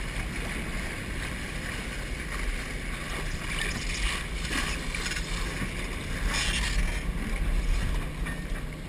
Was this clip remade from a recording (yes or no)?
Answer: no